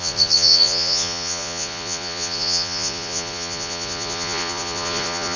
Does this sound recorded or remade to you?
remade